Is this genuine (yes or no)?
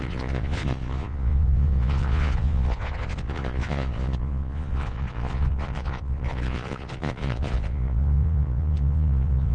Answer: no